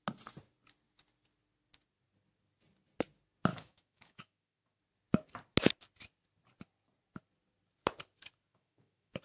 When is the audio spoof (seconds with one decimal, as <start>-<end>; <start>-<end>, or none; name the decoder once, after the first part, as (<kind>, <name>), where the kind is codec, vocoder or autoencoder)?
3.5-4.8 (autoencoder, DAC-VAE); 8.5-9.2